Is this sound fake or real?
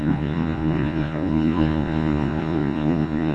fake